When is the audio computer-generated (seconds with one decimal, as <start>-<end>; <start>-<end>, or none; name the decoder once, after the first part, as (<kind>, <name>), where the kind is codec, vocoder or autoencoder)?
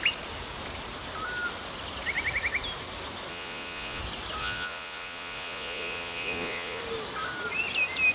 3.3-4.0 (vocoder, Vocos); 4.4-6.8